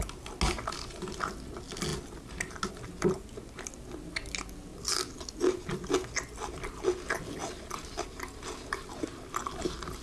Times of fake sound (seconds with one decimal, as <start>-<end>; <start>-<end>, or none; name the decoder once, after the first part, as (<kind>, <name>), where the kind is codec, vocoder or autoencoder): none